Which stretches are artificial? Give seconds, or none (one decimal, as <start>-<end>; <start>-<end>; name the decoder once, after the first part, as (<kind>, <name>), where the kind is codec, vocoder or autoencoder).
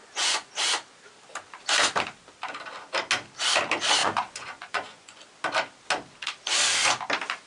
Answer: 0.0-0.5 (vocoder, Vocos); 4.0-5.2